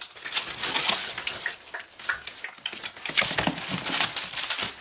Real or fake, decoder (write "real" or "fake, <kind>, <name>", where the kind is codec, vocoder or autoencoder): real